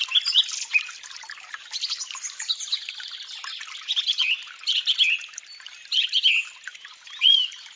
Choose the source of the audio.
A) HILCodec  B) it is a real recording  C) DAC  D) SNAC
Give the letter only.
B